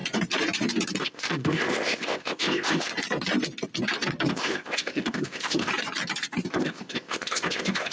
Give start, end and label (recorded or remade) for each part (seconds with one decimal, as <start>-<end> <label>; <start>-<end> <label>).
0.0-1.0 recorded; 1.0-2.9 remade; 2.9-4.3 recorded; 4.3-5.7 remade; 5.7-6.5 recorded; 6.5-7.9 remade